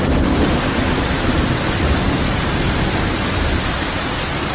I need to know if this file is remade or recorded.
recorded